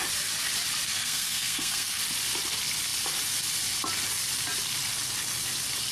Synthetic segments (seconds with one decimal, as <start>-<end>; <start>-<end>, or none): 0.9-2.0